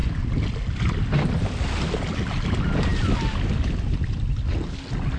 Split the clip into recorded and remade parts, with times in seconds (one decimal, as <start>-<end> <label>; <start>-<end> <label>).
0.0-5.2 recorded